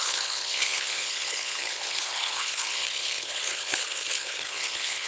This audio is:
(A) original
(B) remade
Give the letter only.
B